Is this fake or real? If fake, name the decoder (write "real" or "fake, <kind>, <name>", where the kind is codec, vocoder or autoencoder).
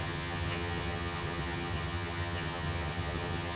fake, vocoder, HiFi-GAN